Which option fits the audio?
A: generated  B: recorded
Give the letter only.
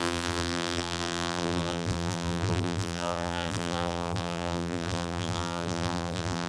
A